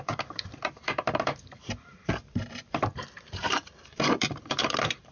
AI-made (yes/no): yes